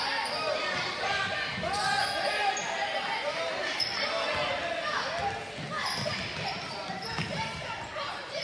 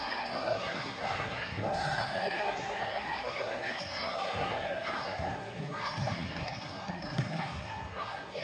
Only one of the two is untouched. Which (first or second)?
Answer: first